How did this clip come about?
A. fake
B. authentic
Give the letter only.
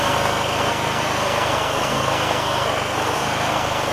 A